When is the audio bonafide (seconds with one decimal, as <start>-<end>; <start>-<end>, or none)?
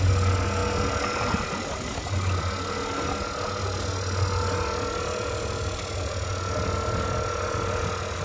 0.0-8.2